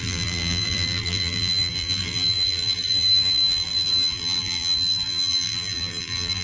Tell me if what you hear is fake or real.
fake